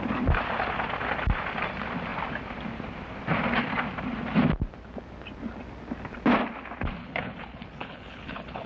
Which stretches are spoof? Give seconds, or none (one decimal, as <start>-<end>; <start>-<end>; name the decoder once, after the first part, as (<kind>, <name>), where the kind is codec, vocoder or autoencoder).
7.0-8.7 (codec, HILCodec)